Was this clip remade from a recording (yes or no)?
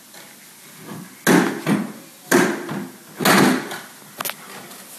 no